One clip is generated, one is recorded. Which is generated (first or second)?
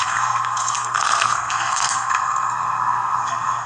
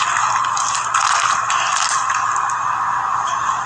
first